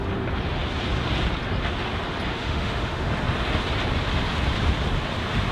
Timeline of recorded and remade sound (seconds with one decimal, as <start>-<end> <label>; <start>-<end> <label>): 0.0-2.3 recorded; 2.3-3.1 remade; 3.1-5.5 recorded